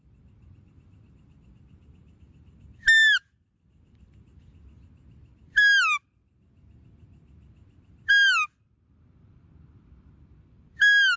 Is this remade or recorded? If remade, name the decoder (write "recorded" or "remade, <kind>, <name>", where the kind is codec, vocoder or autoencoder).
recorded